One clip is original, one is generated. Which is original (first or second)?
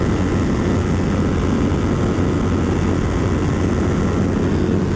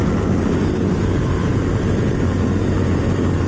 first